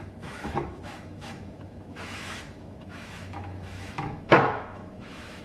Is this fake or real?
fake